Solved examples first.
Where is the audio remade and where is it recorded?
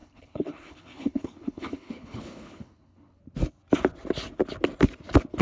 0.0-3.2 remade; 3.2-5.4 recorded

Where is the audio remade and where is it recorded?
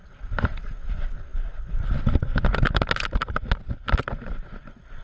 0.0-5.0 recorded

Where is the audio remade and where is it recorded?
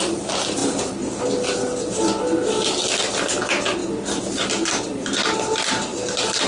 0.0-6.5 recorded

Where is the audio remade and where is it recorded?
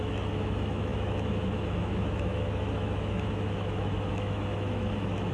0.0-5.3 remade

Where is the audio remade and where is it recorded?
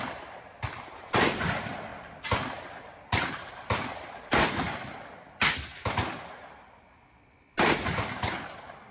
0.0-1.9 recorded; 1.9-4.9 remade; 4.9-8.9 recorded